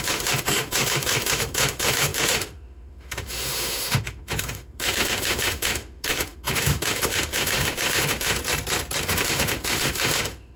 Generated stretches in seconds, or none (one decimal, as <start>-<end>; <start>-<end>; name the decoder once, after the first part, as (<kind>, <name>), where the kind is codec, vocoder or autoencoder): 0.0-8.4 (autoencoder, DAC-VAE); 9.0-10.6